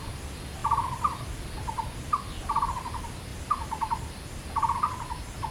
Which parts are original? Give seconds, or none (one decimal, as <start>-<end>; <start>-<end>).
0.0-5.5